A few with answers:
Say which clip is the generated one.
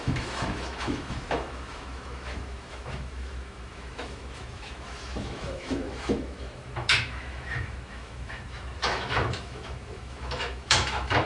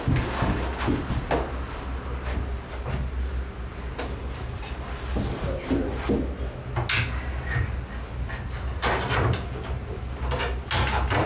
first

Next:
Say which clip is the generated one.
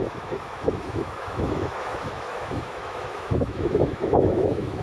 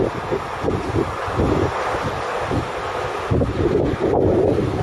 first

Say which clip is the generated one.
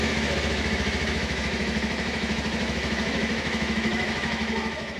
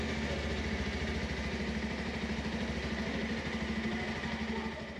first